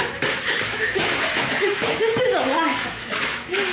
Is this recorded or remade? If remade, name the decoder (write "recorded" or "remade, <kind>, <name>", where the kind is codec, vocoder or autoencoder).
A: remade, autoencoder, DAC-VAE